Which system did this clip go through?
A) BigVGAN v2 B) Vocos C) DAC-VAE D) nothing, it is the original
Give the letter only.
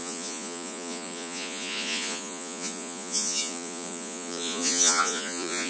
B